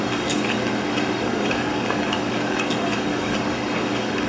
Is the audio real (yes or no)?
no